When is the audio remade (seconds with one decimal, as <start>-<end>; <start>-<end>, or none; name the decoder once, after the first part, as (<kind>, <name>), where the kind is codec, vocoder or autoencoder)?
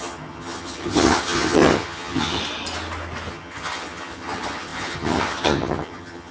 0.0-2.4 (vocoder, HiFi-GAN); 3.3-6.3